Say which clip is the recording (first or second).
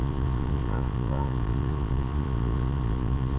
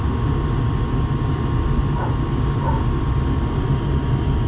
second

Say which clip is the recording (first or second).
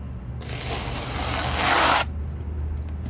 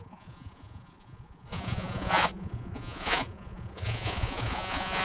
first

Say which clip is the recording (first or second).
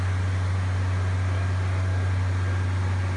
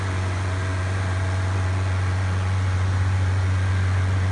first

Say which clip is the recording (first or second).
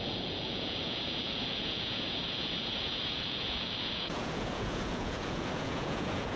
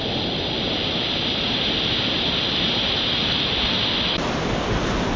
second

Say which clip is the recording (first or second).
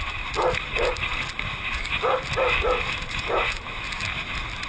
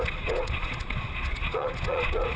first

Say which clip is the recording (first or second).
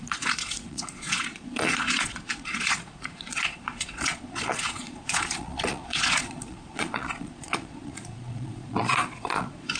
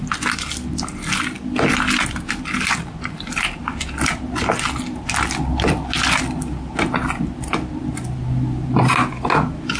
second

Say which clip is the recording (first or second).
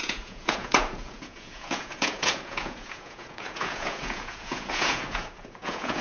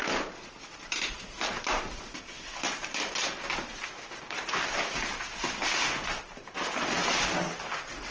second